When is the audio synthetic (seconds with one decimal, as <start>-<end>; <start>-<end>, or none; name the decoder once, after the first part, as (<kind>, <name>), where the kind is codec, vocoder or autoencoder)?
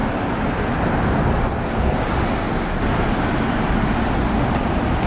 4.2-5.1 (vocoder, BigVGAN v2)